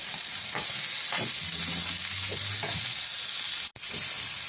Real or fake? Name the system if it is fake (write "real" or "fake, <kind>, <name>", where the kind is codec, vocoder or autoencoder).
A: real